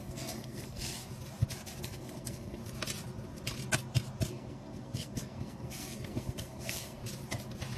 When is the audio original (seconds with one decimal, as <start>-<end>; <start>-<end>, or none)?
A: 1.0-1.8; 2.6-4.3; 7.0-7.8